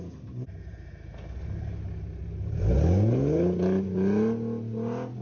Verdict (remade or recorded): recorded